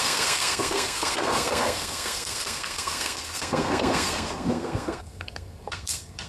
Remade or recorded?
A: remade